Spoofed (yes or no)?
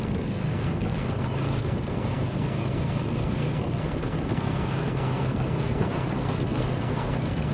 yes